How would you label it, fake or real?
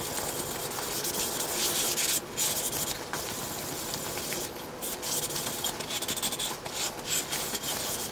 real